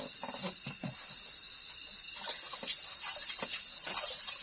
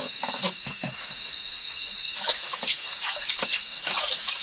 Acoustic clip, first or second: first